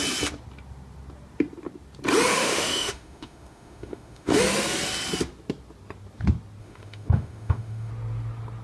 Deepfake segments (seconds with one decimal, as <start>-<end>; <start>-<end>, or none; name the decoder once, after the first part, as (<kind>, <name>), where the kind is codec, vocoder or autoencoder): 2.3-4.4 (autoencoder, DAC-VAE); 6.6-7.9